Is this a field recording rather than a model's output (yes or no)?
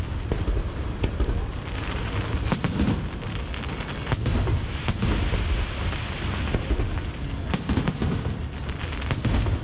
yes